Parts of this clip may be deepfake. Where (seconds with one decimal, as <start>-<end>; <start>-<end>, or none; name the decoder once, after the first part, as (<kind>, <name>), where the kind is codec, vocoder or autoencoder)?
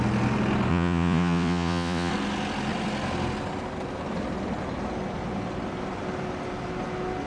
0.7-2.1 (vocoder, Vocos)